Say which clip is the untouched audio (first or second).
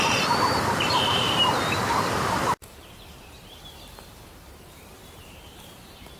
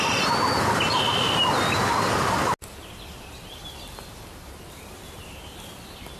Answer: second